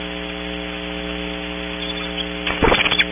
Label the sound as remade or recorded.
recorded